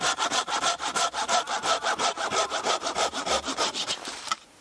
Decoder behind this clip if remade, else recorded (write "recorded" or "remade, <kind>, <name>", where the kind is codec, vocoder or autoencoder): remade, vocoder, BigVGAN v2